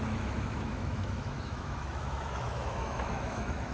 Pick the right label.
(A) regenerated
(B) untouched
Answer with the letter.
A